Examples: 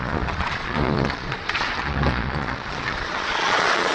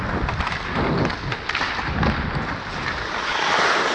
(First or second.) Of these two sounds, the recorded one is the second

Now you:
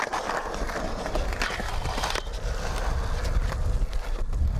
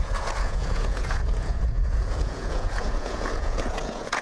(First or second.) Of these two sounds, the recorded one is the first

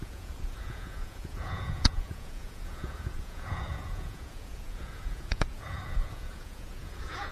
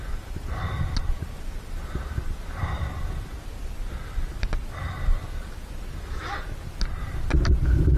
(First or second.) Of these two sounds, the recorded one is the second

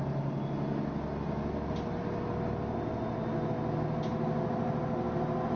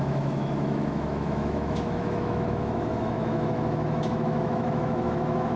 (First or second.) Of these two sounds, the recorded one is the first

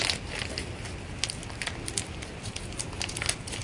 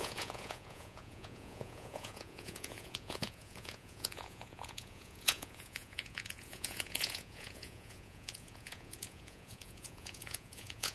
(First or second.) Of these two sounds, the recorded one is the first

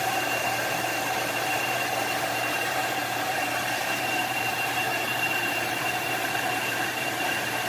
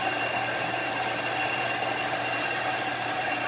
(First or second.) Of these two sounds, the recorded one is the second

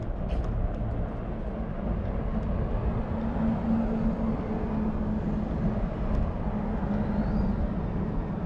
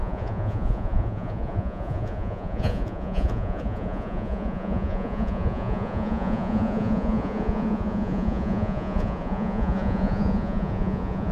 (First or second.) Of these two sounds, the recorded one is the first